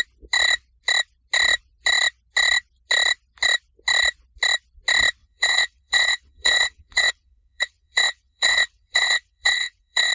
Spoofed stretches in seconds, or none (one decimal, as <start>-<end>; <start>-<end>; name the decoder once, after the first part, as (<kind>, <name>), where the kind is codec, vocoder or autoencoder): 5.2-10.1 (vocoder, WaveNeXt)